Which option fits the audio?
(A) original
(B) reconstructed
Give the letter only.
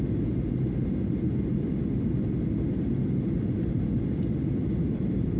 A